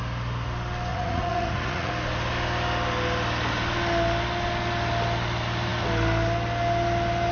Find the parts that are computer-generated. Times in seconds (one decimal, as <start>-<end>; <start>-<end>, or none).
0.9-1.9